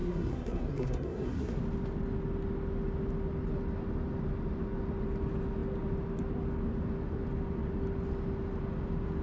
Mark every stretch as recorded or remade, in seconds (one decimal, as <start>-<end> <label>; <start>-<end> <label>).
0.0-1.6 remade; 1.6-9.2 recorded